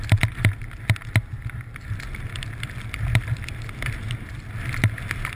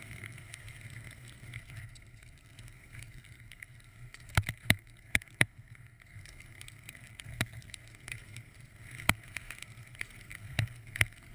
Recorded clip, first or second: first